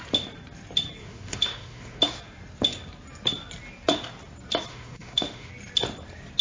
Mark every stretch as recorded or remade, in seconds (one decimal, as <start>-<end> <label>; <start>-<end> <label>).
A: 0.0-1.0 recorded; 1.0-2.0 remade; 2.0-4.7 recorded; 4.7-5.5 remade; 5.5-6.4 recorded